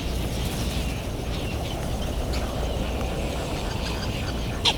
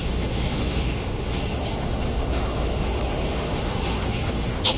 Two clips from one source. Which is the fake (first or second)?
second